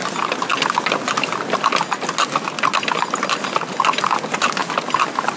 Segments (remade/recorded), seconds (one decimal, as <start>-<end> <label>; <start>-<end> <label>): 0.0-5.4 recorded